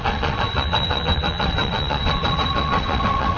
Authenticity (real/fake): fake